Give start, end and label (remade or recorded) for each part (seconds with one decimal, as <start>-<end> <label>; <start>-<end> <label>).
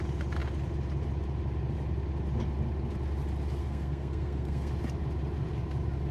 0.0-3.6 recorded; 3.6-4.7 remade; 4.7-6.1 recorded